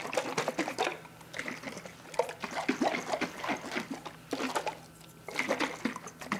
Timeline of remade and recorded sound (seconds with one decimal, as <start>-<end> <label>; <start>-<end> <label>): 0.0-6.4 recorded